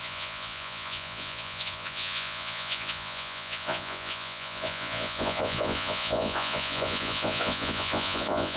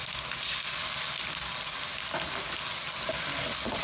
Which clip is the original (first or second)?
second